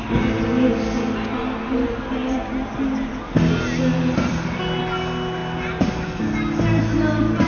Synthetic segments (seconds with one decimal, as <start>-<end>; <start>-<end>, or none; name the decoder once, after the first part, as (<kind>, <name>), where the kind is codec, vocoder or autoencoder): none

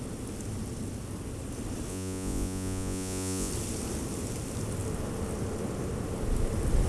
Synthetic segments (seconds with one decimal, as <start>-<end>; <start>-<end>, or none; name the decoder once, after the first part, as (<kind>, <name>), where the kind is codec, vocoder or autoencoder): 1.9-3.5 (vocoder, Vocos)

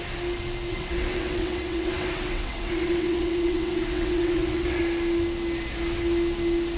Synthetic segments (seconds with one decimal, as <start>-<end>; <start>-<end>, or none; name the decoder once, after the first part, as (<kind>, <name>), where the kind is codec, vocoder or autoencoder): 0.7-4.8 (vocoder, WaveNeXt)

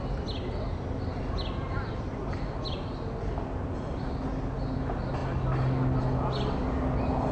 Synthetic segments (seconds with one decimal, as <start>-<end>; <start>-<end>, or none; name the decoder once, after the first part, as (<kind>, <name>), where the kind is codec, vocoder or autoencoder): none

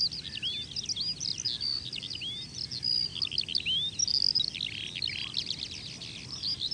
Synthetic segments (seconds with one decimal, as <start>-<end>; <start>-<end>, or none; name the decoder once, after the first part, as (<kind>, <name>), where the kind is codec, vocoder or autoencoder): none

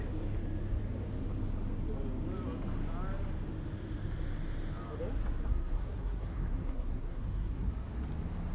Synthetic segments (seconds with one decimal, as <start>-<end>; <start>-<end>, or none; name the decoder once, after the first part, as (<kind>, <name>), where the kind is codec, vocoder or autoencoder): 5.5-7.7 (codec, SNAC)